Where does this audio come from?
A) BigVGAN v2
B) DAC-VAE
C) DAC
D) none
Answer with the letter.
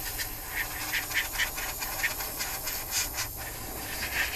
D